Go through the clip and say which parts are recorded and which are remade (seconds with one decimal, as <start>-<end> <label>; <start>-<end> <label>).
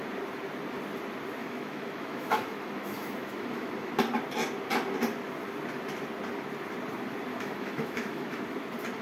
0.0-1.4 recorded; 1.4-3.9 remade; 3.9-7.3 recorded; 7.3-8.4 remade; 8.4-9.0 recorded